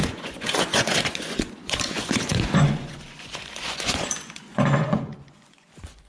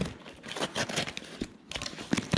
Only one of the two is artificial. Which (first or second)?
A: first